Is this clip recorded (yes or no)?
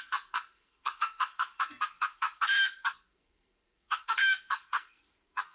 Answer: no